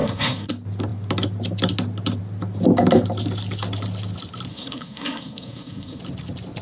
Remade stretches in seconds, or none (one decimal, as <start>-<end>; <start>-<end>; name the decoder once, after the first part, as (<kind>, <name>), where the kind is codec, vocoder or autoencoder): 0.0-0.5 (codec, SNAC); 4.5-6.0